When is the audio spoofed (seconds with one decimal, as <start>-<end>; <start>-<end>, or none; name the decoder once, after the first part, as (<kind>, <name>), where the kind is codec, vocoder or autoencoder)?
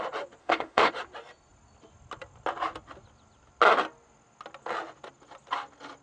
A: 0.4-0.9 (autoencoder, DAC-VAE)